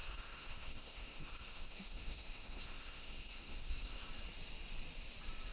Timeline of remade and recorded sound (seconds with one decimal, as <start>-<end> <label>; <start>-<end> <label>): 0.0-4.1 remade; 4.1-5.5 recorded

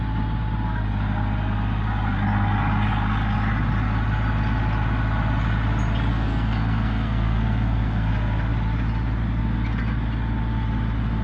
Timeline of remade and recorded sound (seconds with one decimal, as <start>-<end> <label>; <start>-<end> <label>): 0.0-6.1 recorded; 6.1-8.1 remade; 8.1-11.2 recorded

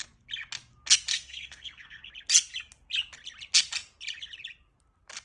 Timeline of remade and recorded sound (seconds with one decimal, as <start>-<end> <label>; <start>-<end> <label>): 0.0-1.1 recorded; 1.1-2.1 remade; 2.1-5.2 recorded